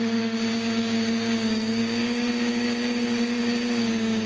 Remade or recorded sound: remade